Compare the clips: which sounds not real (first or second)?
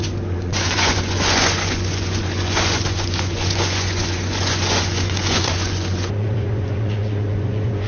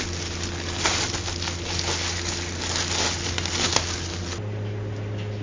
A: first